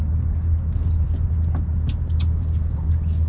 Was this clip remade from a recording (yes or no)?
no